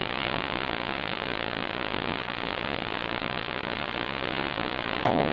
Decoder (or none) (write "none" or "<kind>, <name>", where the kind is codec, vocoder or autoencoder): vocoder, Vocos